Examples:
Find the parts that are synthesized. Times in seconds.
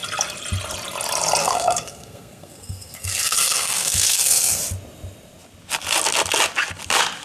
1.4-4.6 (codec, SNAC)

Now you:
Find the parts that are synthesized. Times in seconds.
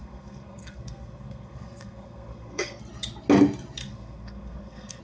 0.0-2.8 (codec, SNAC); 3.8-5.0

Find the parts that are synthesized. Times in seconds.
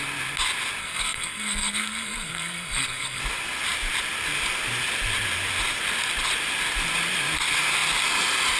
0.8-3.2 (codec, SNAC)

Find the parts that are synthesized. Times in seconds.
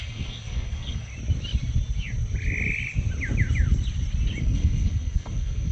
0.0-1.1 (codec, SNAC); 4.4-5.7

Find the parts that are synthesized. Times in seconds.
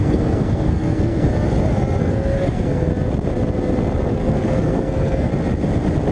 0.0-1.3 (codec, SNAC); 2.0-2.9; 4.1-5.3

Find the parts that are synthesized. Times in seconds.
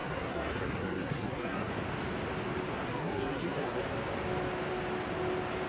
0.0-1.7 (codec, SNAC); 2.7-3.8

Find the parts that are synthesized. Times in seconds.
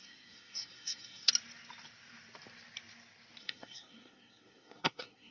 0.0-1.3 (codec, SNAC); 3.4-5.3